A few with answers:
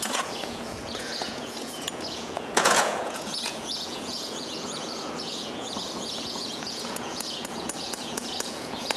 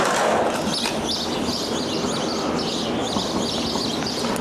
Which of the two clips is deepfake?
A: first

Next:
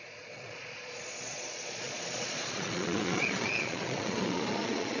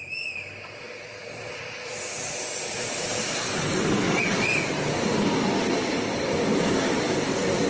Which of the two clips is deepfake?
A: first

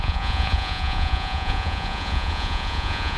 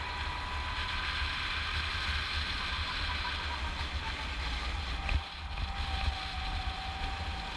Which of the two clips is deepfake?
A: first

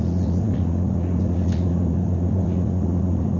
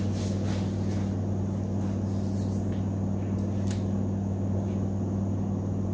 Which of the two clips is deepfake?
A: first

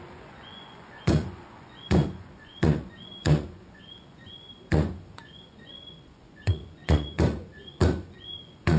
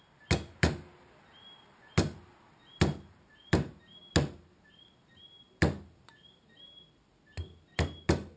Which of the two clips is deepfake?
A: first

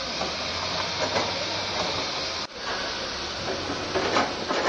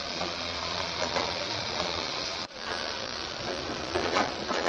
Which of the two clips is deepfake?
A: second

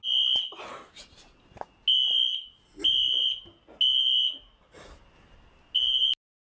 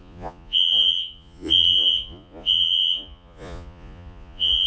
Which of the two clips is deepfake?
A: second